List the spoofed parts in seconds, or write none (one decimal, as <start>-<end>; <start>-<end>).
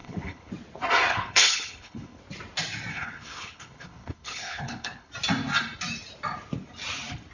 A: 0.0-0.5; 1.1-2.2; 2.9-5.1